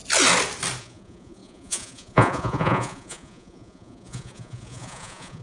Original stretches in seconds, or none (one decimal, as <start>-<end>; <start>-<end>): 0.0-0.8